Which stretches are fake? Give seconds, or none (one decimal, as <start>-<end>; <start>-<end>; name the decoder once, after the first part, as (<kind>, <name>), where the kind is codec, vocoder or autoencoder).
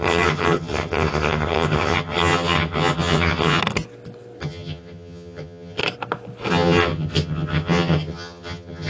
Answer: 0.0-3.6 (vocoder, HiFi-GAN); 4.4-5.8; 6.5-8.9